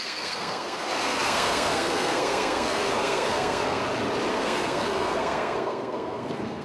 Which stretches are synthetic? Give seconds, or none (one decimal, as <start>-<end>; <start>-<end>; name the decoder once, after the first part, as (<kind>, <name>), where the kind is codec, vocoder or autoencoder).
0.0-3.8 (codec, SNAC); 4.3-6.6